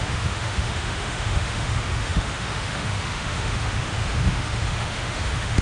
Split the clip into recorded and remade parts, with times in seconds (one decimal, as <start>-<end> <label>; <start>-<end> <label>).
0.0-5.6 remade